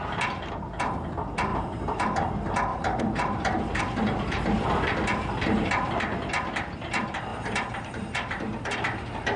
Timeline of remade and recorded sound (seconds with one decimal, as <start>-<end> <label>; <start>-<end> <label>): 0.0-1.5 recorded; 1.5-2.3 remade; 2.3-2.7 recorded; 2.7-3.8 remade; 3.8-7.3 recorded; 7.3-8.6 remade; 8.6-9.4 recorded